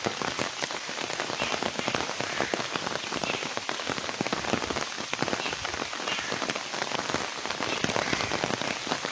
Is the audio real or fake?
real